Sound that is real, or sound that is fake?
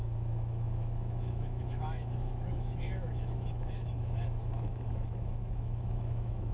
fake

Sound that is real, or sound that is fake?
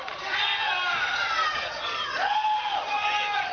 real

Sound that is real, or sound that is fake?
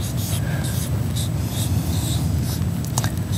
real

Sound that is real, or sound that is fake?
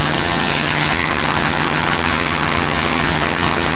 fake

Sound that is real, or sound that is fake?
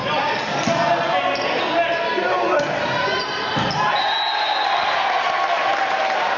real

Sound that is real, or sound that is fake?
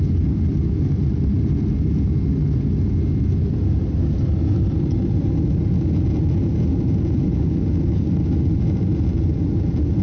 real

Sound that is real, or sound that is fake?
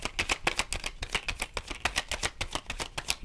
real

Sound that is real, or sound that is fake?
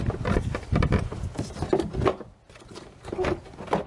real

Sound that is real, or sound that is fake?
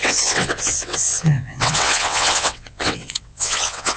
fake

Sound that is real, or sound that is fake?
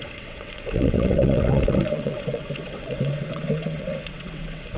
fake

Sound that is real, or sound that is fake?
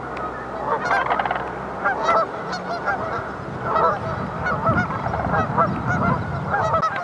real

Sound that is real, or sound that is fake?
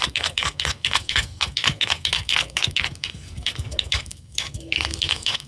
fake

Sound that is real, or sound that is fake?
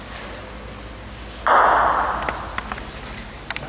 real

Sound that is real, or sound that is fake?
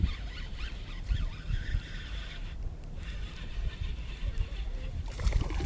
fake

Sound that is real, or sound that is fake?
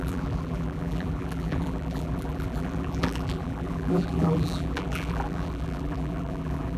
fake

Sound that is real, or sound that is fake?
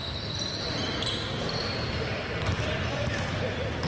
real